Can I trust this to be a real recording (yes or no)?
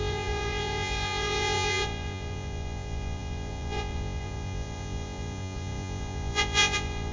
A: no